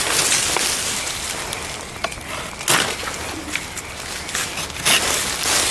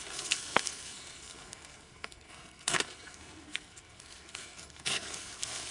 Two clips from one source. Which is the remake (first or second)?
second